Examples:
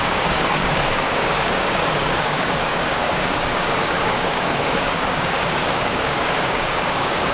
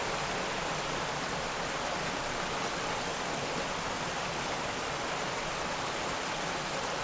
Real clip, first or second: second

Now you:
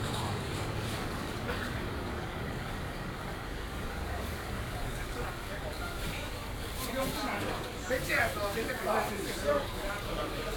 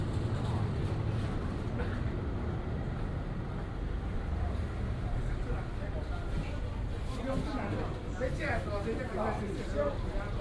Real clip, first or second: second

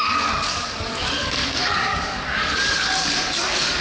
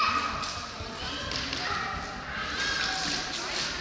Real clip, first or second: second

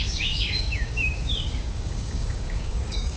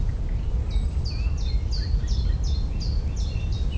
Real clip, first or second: second